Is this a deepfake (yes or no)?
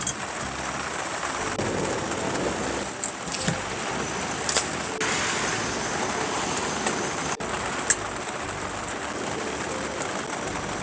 no